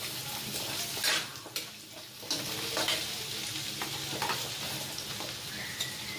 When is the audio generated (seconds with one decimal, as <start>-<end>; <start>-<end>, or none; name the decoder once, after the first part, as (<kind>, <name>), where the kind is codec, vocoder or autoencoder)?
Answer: none